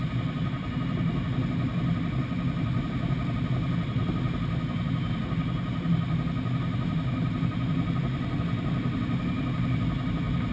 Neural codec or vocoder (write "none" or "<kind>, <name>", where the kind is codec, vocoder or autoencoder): none